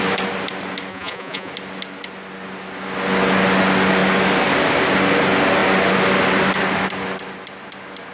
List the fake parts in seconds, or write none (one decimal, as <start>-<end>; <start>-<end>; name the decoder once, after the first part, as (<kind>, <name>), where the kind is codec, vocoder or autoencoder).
0.9-1.5 (vocoder, Vocos)